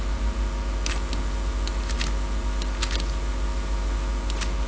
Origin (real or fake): real